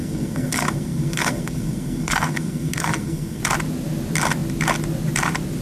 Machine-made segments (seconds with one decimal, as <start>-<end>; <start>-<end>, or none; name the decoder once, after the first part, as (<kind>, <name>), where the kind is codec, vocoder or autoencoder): 0.0-3.4 (codec, SNAC)